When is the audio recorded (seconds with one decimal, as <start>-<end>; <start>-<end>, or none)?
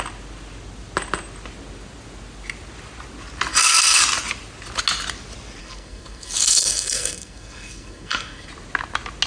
0.0-3.5; 4.0-5.6; 8.5-9.3